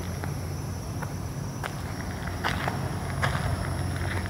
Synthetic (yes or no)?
no